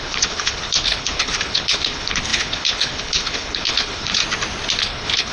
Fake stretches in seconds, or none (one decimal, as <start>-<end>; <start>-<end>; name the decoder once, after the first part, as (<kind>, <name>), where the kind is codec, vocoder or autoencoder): 0.0-4.2 (codec, HILCodec); 4.8-5.3